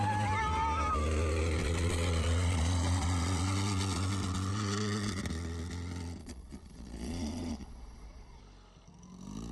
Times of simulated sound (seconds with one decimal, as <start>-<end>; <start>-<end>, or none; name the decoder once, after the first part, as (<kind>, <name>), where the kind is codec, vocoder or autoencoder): 1.6-4.1 (vocoder, Vocos); 4.5-5.2; 6.2-8.4